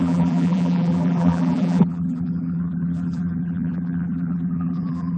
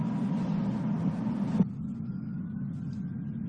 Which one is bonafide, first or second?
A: second